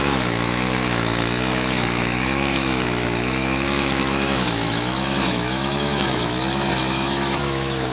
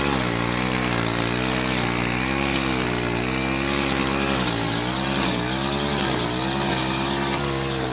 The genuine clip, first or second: second